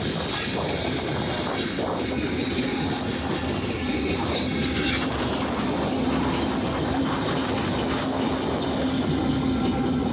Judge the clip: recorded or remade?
recorded